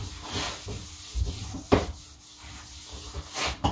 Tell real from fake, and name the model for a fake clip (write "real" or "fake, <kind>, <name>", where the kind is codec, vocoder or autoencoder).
real